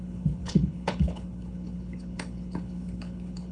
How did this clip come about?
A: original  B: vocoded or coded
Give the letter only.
B